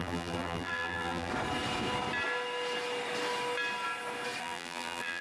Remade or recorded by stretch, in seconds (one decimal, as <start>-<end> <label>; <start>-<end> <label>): 0.0-1.3 remade; 1.3-4.4 recorded; 4.4-5.2 remade